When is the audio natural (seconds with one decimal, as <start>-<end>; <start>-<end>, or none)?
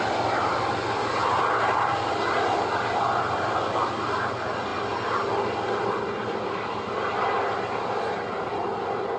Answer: 0.0-9.2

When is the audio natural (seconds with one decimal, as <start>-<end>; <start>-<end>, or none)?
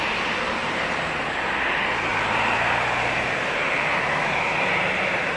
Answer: 0.0-0.6; 1.1-2.1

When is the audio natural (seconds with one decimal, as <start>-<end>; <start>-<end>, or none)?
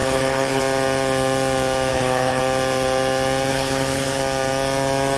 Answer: 0.6-1.9; 2.4-3.5; 4.2-5.2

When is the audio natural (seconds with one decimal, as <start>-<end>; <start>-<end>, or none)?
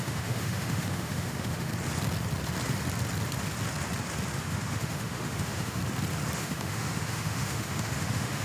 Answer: 1.7-4.4; 5.8-6.4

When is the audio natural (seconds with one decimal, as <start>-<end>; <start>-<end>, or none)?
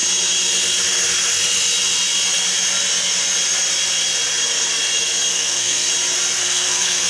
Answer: 0.0-5.3; 5.9-6.4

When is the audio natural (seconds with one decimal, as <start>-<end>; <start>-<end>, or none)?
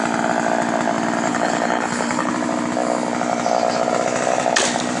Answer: 0.0-1.3; 2.3-5.0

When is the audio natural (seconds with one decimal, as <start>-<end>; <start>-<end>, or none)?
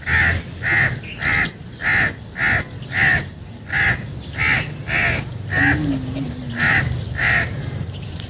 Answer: 0.0-7.2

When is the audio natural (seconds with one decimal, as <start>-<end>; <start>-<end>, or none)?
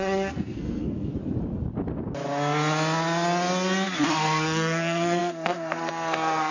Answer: 1.1-4.1